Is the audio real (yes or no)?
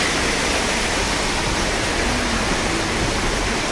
yes